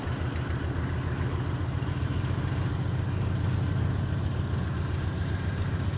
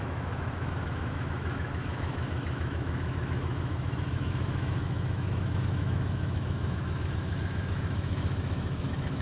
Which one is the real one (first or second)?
first